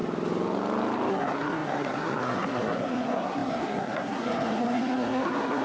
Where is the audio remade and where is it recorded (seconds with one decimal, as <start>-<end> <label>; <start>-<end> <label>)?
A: 0.0-1.1 recorded; 1.1-5.6 remade